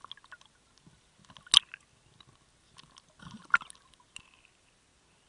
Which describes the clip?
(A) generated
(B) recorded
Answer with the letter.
B